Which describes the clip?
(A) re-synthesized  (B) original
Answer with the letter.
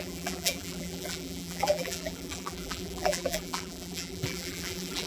A